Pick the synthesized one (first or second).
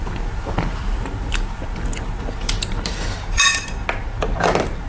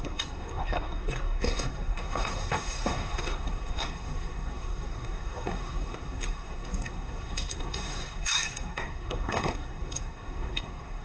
second